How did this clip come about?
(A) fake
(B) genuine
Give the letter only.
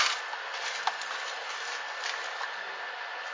B